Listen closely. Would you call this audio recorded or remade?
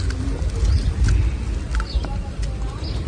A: recorded